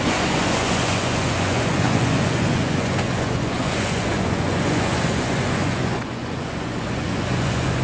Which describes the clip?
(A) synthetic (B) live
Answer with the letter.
A